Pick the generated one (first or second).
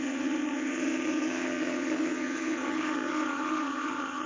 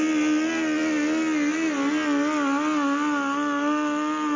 first